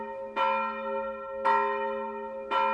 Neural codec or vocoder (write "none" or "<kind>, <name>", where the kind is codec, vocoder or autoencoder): none